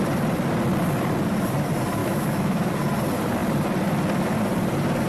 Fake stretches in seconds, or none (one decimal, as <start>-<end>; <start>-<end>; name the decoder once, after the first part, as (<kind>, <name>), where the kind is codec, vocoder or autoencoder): 2.0-2.7 (autoencoder, DAC-VAE)